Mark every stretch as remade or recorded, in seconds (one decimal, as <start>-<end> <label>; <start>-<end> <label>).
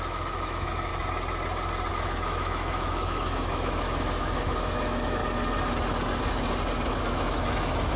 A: 0.0-0.9 remade; 0.9-1.9 recorded; 1.9-5.2 remade; 5.2-7.0 recorded; 7.0-8.0 remade